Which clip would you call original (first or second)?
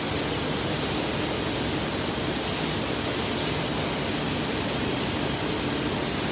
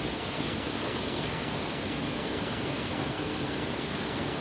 first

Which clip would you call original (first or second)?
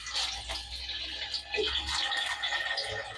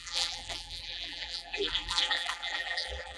first